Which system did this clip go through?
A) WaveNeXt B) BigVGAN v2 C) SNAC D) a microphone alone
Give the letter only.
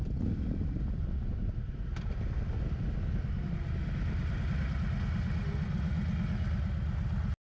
D